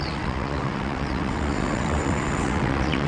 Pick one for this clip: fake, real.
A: fake